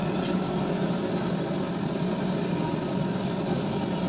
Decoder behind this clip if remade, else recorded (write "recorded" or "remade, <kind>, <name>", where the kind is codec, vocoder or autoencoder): recorded